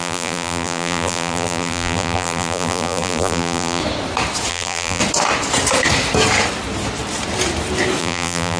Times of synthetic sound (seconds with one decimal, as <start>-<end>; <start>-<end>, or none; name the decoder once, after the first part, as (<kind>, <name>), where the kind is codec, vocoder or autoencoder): 0.0-3.8 (vocoder, BigVGAN v2); 4.5-5.0; 8.0-8.6